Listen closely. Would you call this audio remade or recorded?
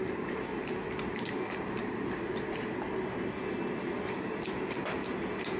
recorded